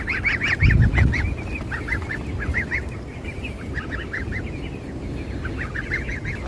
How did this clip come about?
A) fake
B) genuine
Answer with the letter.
B